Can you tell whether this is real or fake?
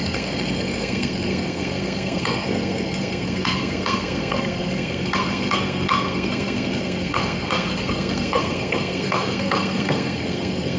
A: fake